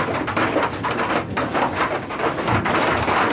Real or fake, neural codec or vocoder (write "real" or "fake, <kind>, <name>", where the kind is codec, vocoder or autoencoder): real